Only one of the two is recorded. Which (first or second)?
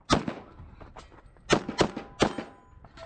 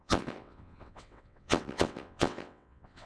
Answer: first